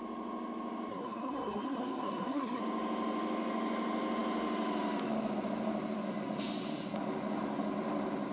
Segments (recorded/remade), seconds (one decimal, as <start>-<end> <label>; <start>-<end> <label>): 0.0-0.9 recorded; 0.9-2.6 remade; 2.6-8.3 recorded